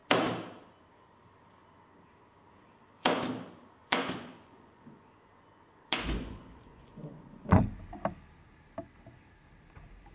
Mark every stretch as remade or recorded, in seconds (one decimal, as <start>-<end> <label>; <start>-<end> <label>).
0.0-3.8 recorded; 3.8-7.6 remade; 7.6-10.1 recorded